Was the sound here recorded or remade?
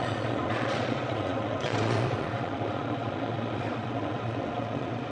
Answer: remade